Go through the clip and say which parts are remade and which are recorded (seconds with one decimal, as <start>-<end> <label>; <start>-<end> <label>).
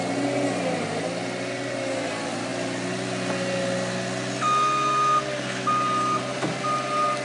0.0-7.2 recorded